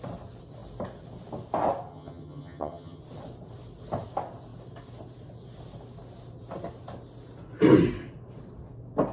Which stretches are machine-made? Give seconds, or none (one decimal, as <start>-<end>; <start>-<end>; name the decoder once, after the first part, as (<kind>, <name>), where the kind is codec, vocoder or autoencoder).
1.9-3.0 (vocoder, HiFi-GAN)